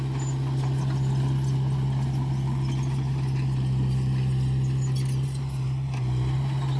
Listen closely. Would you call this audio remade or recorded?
recorded